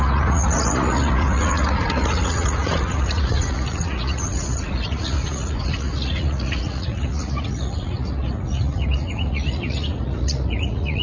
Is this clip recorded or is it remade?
remade